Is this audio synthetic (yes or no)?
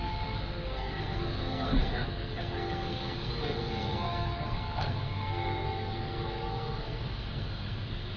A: yes